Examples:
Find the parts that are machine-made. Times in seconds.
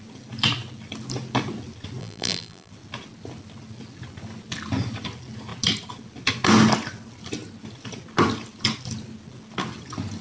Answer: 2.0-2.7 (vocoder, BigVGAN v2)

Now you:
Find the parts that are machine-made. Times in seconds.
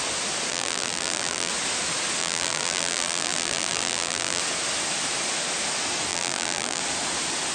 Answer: 0.5-1.5 (vocoder, BigVGAN v2); 2.2-4.4; 6.1-6.8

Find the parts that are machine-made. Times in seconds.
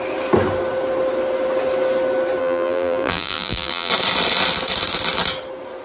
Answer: 2.4-3.9 (vocoder, BigVGAN v2)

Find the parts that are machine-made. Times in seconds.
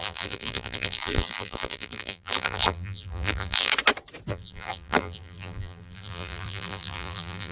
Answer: 0.0-3.7 (vocoder, BigVGAN v2); 4.3-7.5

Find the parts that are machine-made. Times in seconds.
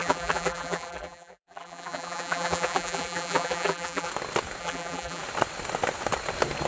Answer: 0.0-4.1 (vocoder, BigVGAN v2); 4.6-5.2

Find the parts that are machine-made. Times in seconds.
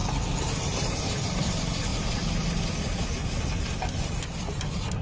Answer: none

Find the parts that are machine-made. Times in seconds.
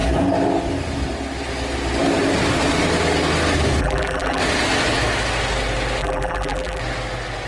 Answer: 3.8-4.4 (vocoder, BigVGAN v2); 6.0-6.8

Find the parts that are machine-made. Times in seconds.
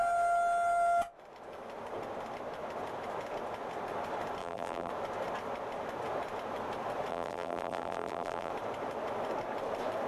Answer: 4.4-4.9 (vocoder, BigVGAN v2); 7.1-8.5